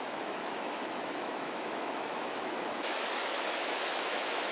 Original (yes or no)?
no